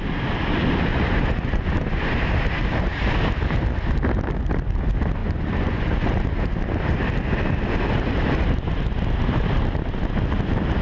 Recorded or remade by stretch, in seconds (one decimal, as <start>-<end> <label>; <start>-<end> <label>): 0.0-0.9 recorded; 0.9-2.2 remade; 2.2-5.2 recorded; 5.2-6.1 remade; 6.1-10.8 recorded